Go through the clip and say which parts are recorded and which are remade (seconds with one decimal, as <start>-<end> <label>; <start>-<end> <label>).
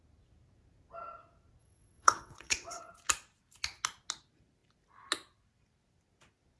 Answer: 0.0-1.6 recorded; 1.6-2.9 remade; 2.9-6.6 recorded